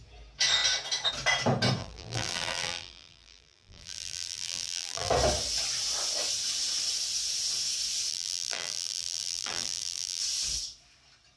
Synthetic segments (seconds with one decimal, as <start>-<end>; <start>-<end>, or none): 1.8-5.1; 8.1-10.2